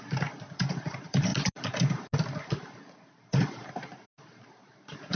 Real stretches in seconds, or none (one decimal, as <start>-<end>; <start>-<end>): 1.3-3.7